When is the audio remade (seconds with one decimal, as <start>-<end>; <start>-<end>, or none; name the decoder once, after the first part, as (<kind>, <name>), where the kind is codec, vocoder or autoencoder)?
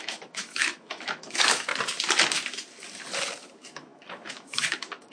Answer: 0.0-1.7 (autoencoder, DAC-VAE); 3.4-5.1